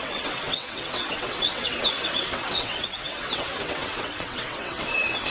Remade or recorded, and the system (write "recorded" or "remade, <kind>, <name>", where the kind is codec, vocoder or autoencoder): remade, vocoder, WaveNeXt